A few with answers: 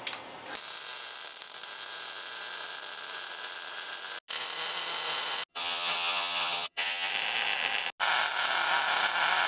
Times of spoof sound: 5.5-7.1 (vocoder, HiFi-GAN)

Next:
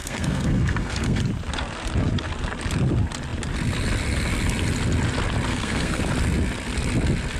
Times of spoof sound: 0.0-1.2 (codec, SNAC); 5.5-6.0

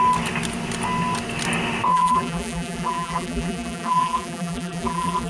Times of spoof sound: 1.9-5.3 (vocoder, BigVGAN v2)

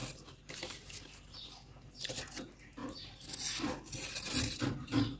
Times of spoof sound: none

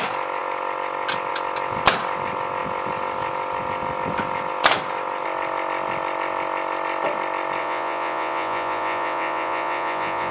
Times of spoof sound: 7.6-10.3 (vocoder, Vocos)

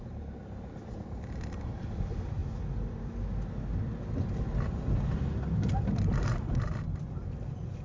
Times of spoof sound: 0.0-2.4 (vocoder, BigVGAN v2); 5.8-7.8